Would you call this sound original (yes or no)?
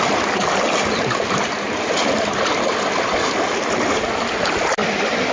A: yes